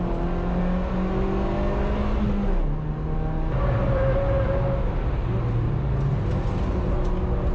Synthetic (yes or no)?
no